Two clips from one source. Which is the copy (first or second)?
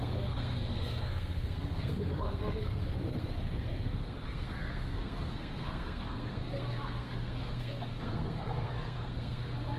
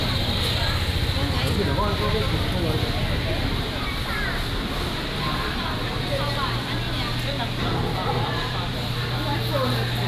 first